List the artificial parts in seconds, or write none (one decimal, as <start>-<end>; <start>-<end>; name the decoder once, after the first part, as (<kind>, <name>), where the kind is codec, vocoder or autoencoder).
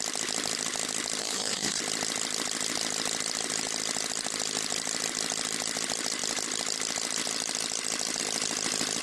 1.2-1.8 (codec, SNAC)